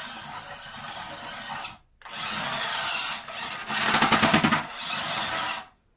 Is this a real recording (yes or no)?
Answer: yes